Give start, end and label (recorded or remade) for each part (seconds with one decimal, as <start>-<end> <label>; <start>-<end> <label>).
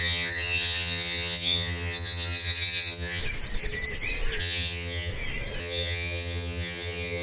0.0-3.2 remade; 3.2-4.4 recorded; 4.4-5.1 remade; 5.1-5.6 recorded; 5.6-7.2 remade